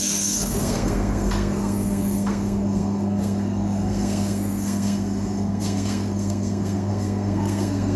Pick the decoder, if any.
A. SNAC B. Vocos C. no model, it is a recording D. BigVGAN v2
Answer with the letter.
A